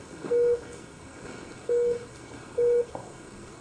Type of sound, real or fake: fake